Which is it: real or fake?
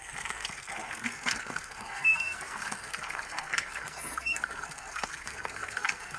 fake